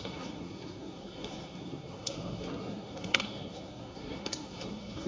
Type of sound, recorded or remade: remade